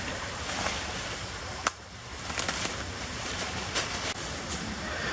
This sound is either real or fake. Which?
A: real